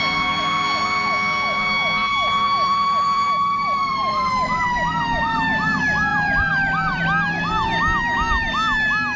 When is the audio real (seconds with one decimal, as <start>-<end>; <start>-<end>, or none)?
0.0-2.1; 4.2-6.1; 7.0-9.2